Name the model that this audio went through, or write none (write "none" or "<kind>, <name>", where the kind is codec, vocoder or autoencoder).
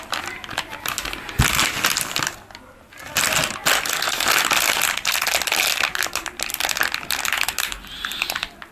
none